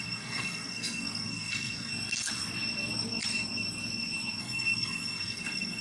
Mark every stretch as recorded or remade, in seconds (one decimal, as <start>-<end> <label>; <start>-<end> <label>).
0.0-1.9 remade; 1.9-4.4 recorded; 4.4-5.8 remade